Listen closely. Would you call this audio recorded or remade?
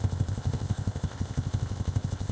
remade